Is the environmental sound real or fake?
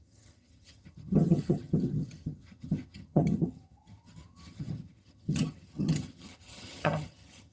fake